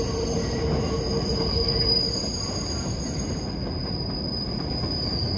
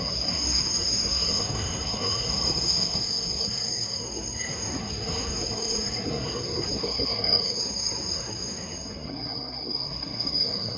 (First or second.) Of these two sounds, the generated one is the second